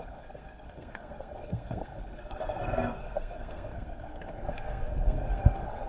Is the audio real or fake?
fake